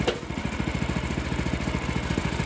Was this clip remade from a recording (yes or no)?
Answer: no